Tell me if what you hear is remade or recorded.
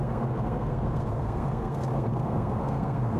remade